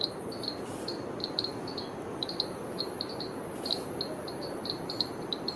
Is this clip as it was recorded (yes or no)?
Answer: no